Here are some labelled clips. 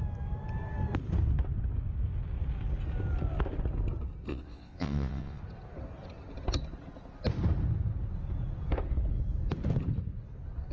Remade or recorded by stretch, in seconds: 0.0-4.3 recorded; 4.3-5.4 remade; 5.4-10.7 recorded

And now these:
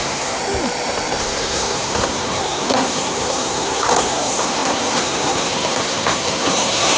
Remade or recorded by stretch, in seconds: 0.0-0.4 remade; 0.4-1.2 recorded; 1.2-7.0 remade

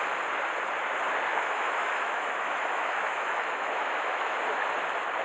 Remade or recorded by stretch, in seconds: 0.0-1.3 recorded; 1.3-4.4 remade; 4.4-5.2 recorded

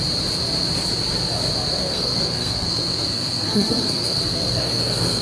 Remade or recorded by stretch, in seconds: 0.0-1.8 recorded; 1.8-5.2 remade